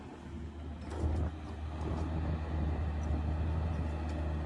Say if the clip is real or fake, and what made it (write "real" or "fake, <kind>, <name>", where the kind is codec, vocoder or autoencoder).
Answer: real